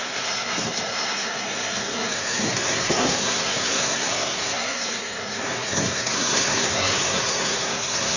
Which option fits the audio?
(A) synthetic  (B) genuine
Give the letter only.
A